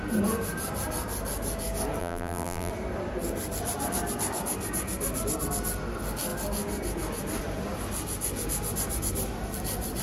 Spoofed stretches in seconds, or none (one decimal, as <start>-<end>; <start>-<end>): 2.0-2.7